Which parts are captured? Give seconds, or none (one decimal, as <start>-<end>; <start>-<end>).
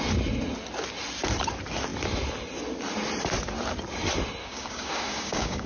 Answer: 0.0-4.4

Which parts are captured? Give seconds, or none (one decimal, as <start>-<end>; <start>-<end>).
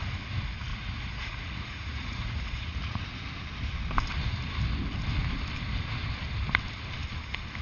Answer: 0.0-0.7; 3.1-7.6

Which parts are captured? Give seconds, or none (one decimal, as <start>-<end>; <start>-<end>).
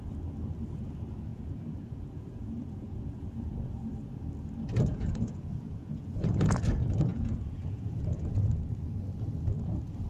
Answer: 0.0-1.3; 3.2-4.9; 6.6-7.1; 8.3-10.1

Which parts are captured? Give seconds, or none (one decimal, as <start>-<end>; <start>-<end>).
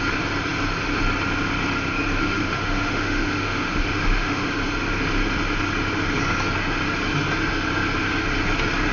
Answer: 0.0-2.2; 4.5-8.9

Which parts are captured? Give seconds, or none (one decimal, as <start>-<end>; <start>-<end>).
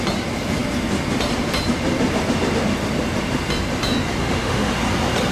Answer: 0.0-4.2; 4.7-5.3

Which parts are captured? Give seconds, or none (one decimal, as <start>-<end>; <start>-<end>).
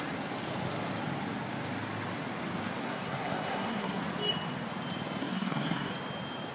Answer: 0.0-2.8; 4.0-5.2; 5.9-6.5